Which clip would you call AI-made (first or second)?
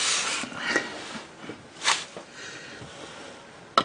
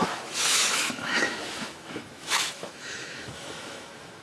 second